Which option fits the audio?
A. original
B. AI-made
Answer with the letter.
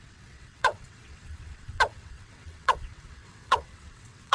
B